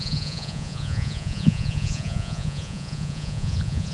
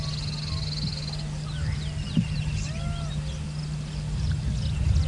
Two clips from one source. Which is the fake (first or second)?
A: first